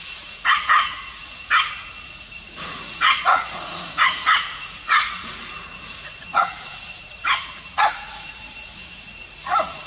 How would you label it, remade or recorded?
remade